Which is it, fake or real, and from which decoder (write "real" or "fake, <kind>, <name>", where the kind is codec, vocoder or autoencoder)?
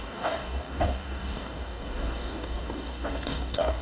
fake, codec, DAC